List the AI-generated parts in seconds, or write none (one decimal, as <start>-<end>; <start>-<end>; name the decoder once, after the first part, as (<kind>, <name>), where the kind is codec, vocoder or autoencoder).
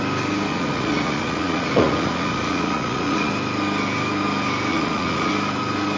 0.5-3.3 (vocoder, Vocos); 4.7-5.3